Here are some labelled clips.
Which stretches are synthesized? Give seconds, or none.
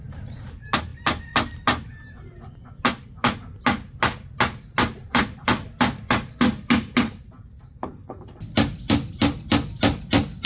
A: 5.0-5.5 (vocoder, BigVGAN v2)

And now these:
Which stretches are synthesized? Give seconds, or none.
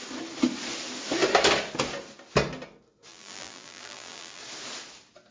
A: 3.1-4.4 (vocoder, BigVGAN v2)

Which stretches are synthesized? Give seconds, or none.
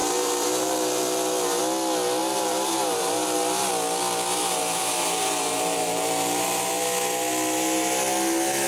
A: 0.0-1.6 (vocoder, BigVGAN v2); 2.2-3.7; 4.4-6.7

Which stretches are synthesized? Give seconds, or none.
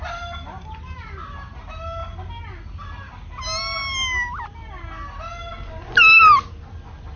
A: none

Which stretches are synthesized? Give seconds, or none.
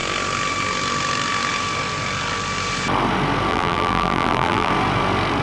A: 3.5-4.7 (vocoder, BigVGAN v2)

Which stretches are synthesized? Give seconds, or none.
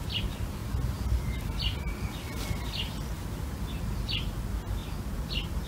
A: 0.0-0.6 (vocoder, BigVGAN v2); 2.1-5.7